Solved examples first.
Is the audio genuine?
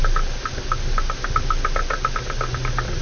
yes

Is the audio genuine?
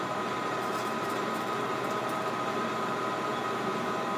no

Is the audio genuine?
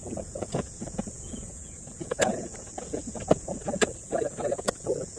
no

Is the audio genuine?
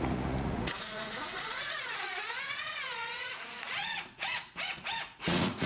no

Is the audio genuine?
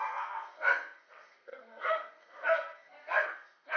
no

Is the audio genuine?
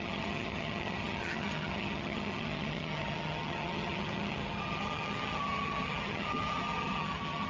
no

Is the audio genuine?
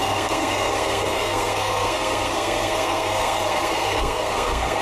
no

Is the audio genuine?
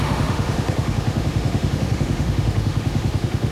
no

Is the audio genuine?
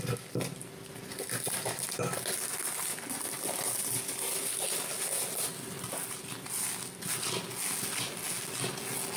yes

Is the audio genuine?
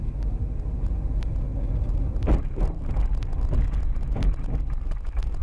yes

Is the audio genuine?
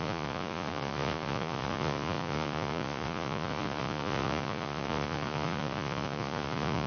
no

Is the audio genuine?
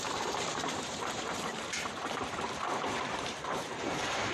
no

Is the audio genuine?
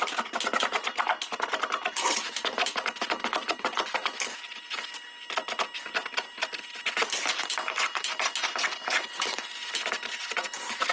yes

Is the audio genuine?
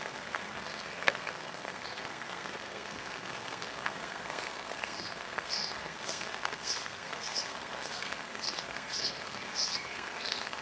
no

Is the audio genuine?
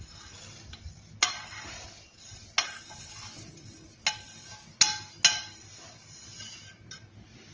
yes